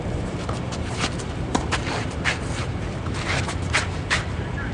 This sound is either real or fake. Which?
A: fake